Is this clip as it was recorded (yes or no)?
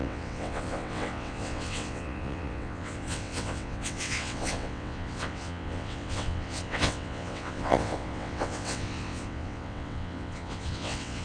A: no